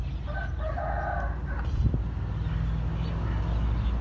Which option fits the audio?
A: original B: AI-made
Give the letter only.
A